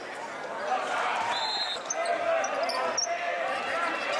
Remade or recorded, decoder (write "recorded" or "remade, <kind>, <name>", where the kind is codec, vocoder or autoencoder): recorded